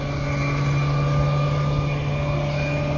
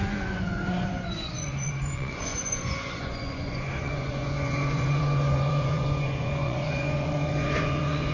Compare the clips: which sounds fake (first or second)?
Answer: second